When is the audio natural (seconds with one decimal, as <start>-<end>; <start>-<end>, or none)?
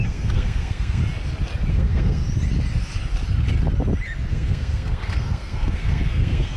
1.0-1.7; 2.2-4.3